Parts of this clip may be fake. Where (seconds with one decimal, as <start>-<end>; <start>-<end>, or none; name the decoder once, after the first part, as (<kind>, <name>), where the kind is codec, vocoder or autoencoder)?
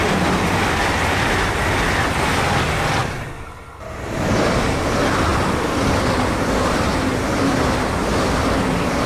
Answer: none